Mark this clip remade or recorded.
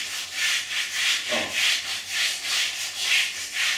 recorded